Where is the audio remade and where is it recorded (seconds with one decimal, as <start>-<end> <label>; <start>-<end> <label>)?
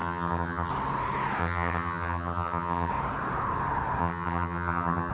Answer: 0.0-0.7 remade; 0.7-1.4 recorded; 1.4-2.9 remade; 2.9-4.0 recorded; 4.0-5.1 remade